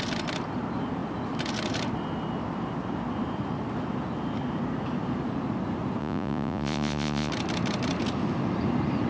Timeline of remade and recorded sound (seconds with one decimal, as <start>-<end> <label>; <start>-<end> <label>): 0.0-6.0 recorded; 6.0-7.3 remade; 7.3-9.1 recorded